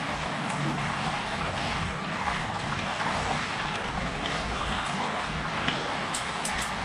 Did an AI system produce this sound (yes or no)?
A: yes